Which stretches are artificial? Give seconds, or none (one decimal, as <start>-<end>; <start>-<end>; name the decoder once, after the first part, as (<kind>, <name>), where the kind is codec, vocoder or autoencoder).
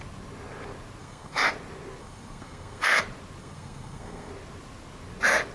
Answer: 1.0-1.5 (codec, SNAC); 2.0-3.0; 3.4-4.3